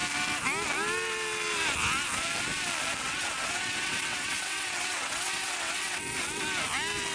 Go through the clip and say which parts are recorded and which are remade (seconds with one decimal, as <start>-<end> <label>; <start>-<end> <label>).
0.0-3.0 recorded; 3.0-6.4 remade; 6.4-7.1 recorded